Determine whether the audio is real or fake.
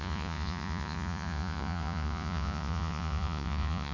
fake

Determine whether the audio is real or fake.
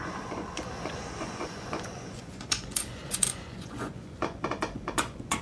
fake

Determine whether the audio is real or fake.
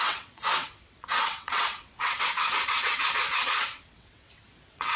fake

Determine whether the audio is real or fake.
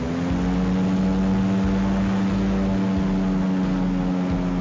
real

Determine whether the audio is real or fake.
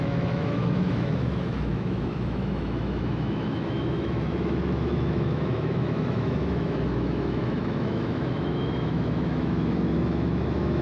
fake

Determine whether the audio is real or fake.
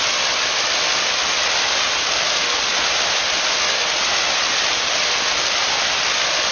real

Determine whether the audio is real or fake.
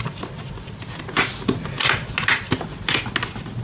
real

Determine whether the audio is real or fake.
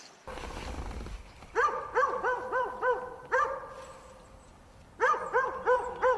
fake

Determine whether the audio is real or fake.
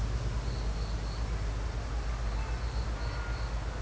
real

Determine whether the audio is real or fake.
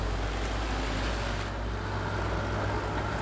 real